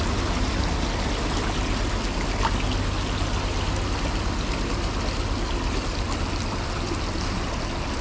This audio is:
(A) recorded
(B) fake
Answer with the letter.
A